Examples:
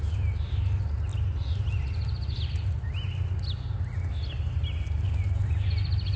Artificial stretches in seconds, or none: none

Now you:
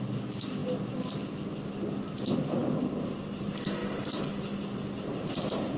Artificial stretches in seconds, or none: none

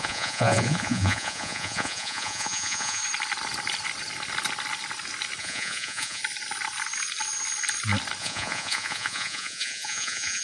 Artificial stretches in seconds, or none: 0.0-3.0 (vocoder, Vocos); 5.4-6.2; 8.2-10.4